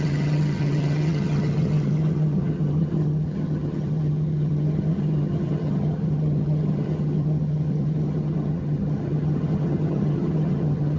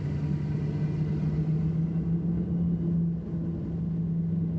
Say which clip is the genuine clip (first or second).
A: second